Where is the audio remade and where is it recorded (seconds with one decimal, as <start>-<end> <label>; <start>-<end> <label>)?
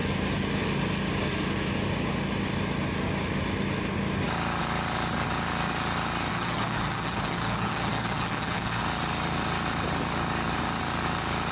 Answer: 0.0-6.3 recorded; 6.3-8.8 remade; 8.8-11.5 recorded